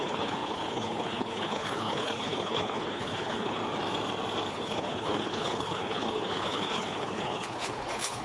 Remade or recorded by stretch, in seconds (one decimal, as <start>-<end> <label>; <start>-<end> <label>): 0.0-3.6 remade; 3.6-4.5 recorded; 4.5-8.2 remade